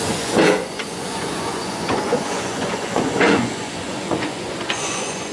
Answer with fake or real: fake